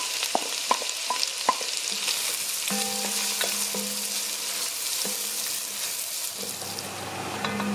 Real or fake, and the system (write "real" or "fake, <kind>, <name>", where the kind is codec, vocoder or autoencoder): real